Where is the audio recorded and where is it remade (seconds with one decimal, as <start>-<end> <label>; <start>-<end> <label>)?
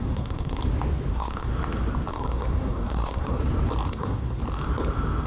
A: 0.0-0.6 remade; 0.6-1.1 recorded; 1.1-1.5 remade; 1.5-2.1 recorded; 2.1-3.4 remade; 3.4-3.9 recorded; 3.9-4.4 remade; 4.4-5.3 recorded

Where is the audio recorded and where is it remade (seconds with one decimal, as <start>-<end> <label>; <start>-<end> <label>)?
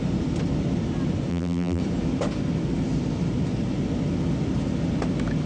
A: 0.0-1.3 recorded; 1.3-1.8 remade; 1.8-5.5 recorded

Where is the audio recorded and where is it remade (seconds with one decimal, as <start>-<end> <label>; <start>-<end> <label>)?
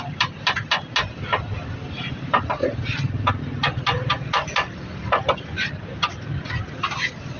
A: 0.0-5.6 recorded; 5.6-6.2 remade; 6.2-7.4 recorded